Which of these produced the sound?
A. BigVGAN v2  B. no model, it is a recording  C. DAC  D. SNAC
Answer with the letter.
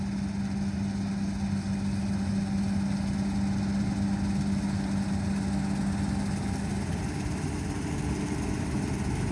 B